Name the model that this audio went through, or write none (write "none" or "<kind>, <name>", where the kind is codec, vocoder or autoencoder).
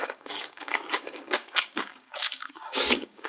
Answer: codec, DAC